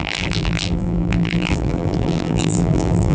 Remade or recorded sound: remade